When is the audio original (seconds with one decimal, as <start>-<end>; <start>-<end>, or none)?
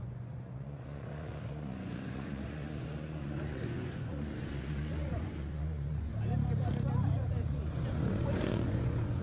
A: 6.1-7.2